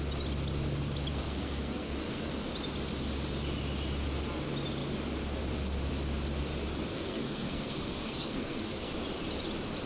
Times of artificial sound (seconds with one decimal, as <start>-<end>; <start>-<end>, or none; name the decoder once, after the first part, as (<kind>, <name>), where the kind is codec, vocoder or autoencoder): 1.1-2.5 (codec, SNAC); 6.9-8.9